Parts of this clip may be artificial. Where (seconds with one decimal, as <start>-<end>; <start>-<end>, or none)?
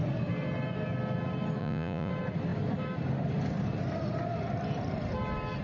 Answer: 1.6-2.1